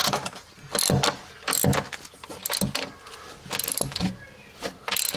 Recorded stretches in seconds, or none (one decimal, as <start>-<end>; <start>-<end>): 0.5-5.2